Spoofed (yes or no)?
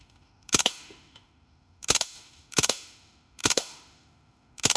yes